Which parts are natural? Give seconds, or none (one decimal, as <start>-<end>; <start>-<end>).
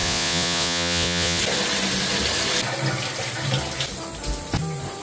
1.4-5.0